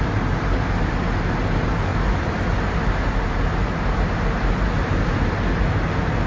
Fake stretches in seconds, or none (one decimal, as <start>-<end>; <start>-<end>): 1.9-5.7